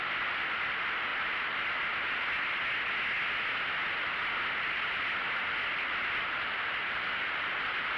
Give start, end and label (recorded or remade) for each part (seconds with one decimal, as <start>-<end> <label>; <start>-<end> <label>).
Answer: 0.0-8.0 recorded